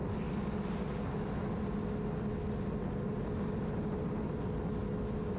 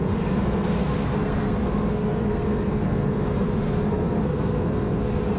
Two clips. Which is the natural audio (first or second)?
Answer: first